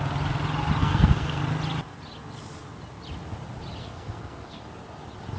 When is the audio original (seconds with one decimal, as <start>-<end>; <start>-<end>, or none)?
0.0-0.8; 1.4-3.8; 4.6-5.4

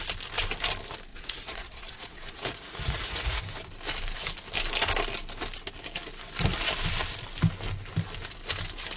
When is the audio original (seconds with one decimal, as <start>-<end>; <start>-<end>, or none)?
0.0-1.1; 3.4-9.0

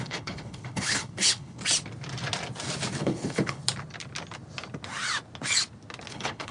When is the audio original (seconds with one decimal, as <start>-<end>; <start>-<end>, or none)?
1.6-3.0; 3.6-6.1

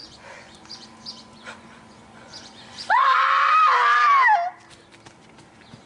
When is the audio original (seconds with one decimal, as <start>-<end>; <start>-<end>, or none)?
3.5-5.9

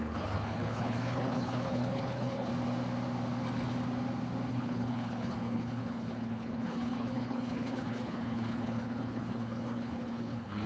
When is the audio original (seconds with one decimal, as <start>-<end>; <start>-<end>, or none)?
2.5-4.5

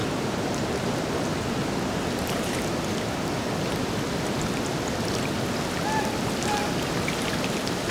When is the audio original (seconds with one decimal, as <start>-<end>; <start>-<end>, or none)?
2.6-7.9

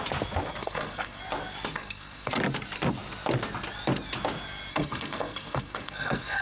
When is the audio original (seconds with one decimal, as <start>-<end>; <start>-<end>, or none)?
0.0-0.6; 1.2-1.7; 2.3-4.7

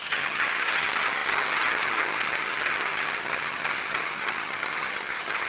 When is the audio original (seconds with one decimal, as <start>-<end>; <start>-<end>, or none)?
none